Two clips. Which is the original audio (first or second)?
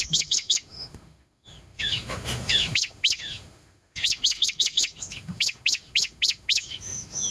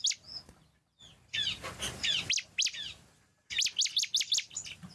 second